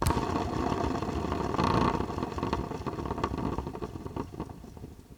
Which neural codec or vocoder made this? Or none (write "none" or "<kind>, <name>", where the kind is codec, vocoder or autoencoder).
none